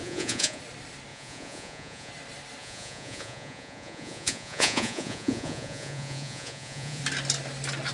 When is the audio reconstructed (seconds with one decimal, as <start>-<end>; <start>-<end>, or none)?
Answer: 0.0-0.6; 1.1-2.1; 2.6-7.0